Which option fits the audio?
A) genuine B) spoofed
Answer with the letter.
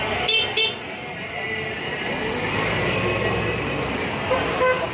A